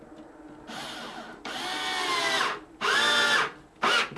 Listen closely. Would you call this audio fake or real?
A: real